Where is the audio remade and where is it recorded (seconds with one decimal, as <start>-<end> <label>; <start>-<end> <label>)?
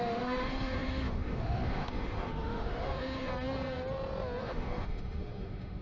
0.0-3.3 remade; 3.3-4.4 recorded; 4.4-5.8 remade